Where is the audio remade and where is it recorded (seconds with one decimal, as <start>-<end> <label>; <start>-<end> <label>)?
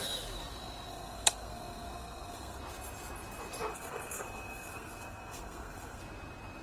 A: 0.0-0.9 recorded; 0.9-2.6 remade; 2.6-3.7 recorded; 3.7-6.0 remade; 6.0-6.6 recorded